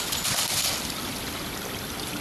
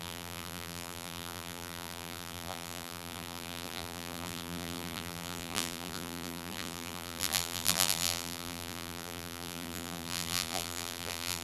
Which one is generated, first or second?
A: second